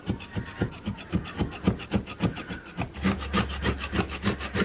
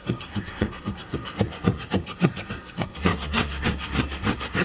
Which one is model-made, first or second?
second